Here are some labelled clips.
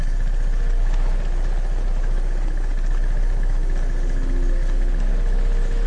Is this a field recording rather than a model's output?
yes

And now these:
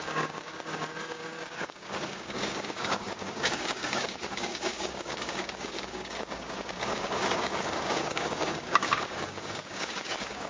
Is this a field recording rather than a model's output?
no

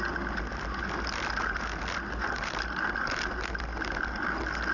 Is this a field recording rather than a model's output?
yes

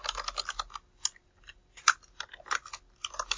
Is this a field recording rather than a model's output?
yes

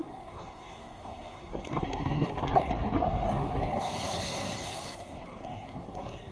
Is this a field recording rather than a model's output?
no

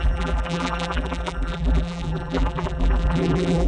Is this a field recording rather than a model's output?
no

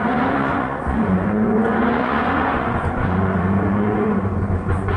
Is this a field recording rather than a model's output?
no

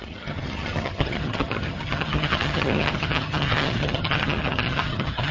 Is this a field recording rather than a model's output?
no